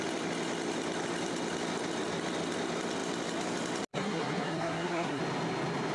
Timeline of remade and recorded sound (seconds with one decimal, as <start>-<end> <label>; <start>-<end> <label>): 0.0-3.9 recorded; 3.9-5.2 remade; 5.2-5.9 recorded